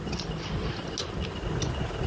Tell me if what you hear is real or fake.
real